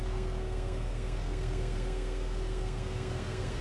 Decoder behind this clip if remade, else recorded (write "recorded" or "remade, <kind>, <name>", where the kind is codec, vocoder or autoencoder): remade, codec, SNAC